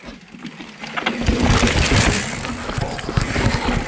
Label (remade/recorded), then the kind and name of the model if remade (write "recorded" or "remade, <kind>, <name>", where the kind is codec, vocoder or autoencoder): recorded